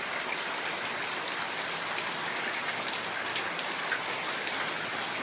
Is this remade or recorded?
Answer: remade